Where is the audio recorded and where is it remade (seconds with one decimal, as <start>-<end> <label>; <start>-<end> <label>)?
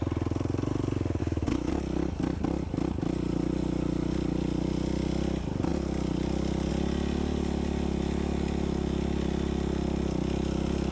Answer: 0.0-1.2 recorded; 1.2-1.7 remade; 1.7-10.9 recorded